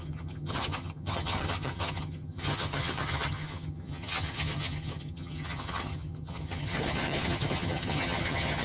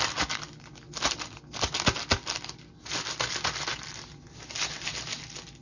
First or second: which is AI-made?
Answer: first